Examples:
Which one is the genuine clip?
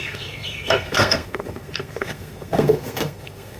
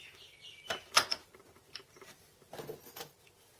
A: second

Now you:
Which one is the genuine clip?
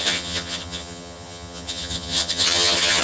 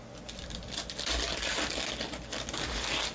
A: second